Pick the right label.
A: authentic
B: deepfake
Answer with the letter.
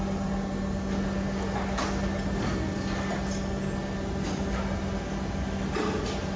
A